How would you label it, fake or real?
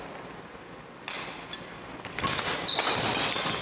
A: real